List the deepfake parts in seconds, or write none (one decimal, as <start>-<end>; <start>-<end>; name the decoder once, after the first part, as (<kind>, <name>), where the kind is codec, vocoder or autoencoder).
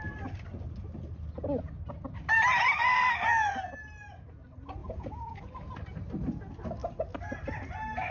4.8-5.5 (vocoder, Vocos)